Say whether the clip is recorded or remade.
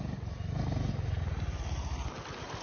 recorded